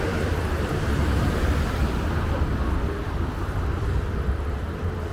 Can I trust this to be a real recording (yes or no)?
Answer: no